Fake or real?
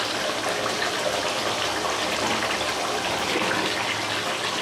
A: real